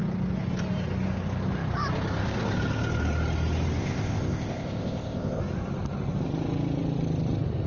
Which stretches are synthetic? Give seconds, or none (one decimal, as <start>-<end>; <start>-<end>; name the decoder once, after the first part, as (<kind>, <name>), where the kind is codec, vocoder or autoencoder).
3.8-5.4 (codec, ZipCodec)